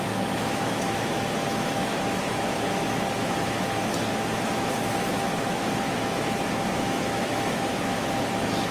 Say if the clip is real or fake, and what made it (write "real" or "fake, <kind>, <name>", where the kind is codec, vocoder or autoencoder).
fake, autoencoder, DAC-VAE